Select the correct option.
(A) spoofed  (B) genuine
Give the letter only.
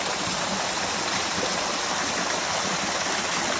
A